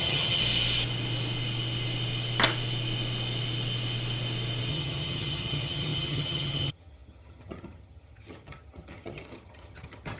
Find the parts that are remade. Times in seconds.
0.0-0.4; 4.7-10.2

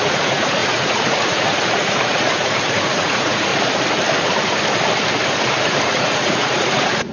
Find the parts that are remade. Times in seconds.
0.0-3.5; 5.6-7.1

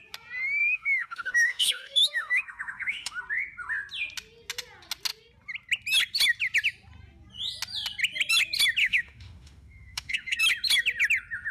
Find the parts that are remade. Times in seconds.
0.6-3.2; 8.8-10.4

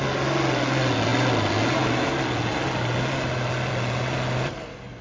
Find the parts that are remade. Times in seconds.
none